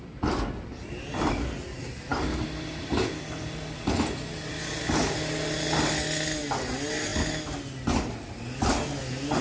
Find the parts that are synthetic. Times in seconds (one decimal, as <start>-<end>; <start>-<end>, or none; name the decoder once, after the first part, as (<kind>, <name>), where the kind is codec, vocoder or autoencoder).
none